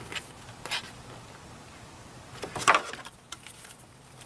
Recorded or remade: recorded